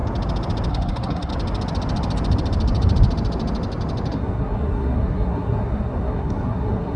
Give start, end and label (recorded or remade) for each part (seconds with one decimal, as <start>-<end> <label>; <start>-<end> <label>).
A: 0.0-0.7 recorded; 0.7-1.3 remade; 1.3-4.1 recorded; 4.1-7.0 remade